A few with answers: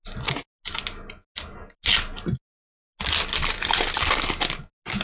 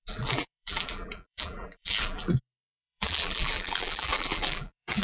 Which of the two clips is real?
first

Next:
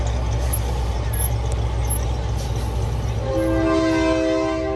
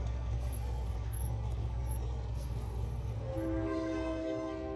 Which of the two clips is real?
first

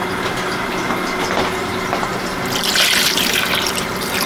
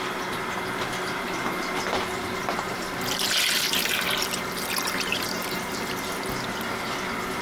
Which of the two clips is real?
second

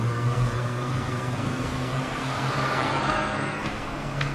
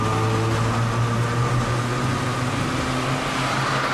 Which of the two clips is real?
second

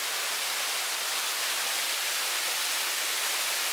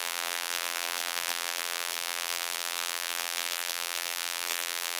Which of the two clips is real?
first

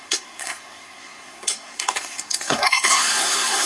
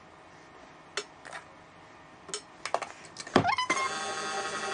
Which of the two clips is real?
second